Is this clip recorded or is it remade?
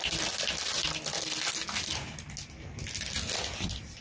recorded